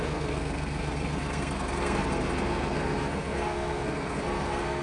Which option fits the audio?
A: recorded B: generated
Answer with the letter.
B